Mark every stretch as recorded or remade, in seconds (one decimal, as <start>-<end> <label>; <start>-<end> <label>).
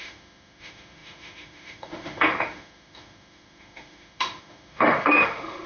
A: 0.0-5.7 remade